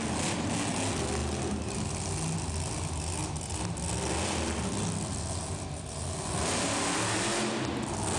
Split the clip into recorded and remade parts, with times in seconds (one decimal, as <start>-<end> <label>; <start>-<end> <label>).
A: 0.0-8.2 recorded